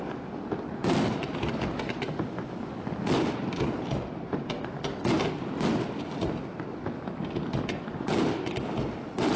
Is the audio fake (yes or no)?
no